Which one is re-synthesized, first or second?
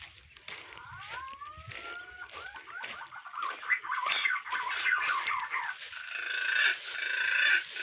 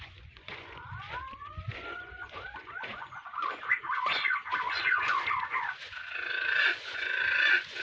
second